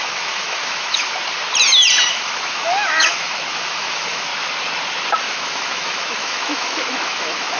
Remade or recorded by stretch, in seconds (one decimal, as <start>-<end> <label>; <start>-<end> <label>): 0.0-1.2 remade; 1.2-2.1 recorded; 2.1-4.3 remade; 4.3-5.2 recorded; 5.2-7.6 remade